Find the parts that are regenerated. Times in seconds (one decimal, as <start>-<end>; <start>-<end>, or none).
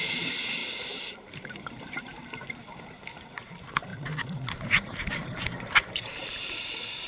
0.0-0.6; 1.1-3.9; 4.7-7.1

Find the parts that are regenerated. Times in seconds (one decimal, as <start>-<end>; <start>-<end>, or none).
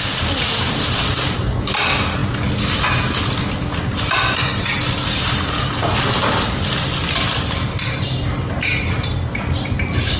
none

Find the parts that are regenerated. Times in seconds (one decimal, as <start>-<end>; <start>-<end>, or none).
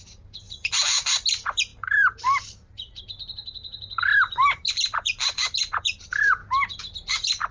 0.7-4.1; 4.7-6.4; 7.1-7.5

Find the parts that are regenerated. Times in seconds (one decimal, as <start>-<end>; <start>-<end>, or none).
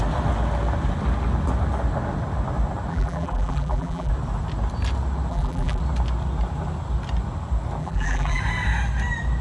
2.9-4.1; 5.3-5.8; 7.8-8.4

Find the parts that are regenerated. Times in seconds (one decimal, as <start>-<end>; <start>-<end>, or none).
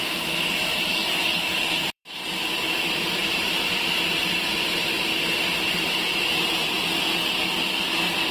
0.0-1.0; 1.7-6.9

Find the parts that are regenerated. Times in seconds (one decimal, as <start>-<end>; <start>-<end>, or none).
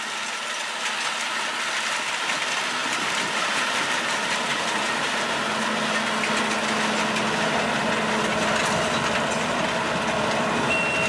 2.8-5.4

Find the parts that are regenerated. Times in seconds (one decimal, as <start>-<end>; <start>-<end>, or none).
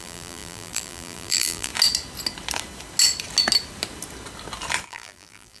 0.0-1.7; 4.9-5.6